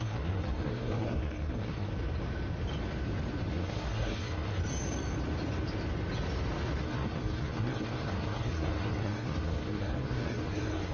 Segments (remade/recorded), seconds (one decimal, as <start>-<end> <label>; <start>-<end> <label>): 0.0-1.9 remade; 1.9-3.5 recorded; 3.5-4.6 remade; 4.6-6.8 recorded; 6.8-10.9 remade